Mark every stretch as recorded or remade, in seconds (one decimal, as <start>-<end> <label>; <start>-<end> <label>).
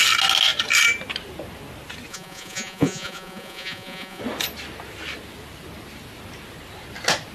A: 0.0-2.1 recorded; 2.1-4.2 remade; 4.2-7.3 recorded